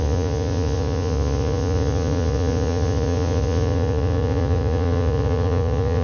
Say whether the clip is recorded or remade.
remade